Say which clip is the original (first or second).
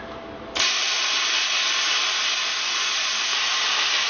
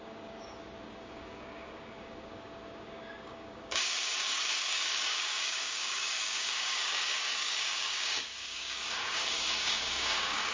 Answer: first